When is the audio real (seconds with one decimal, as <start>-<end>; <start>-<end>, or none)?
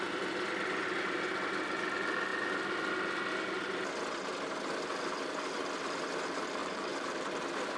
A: 0.0-6.6; 7.3-7.8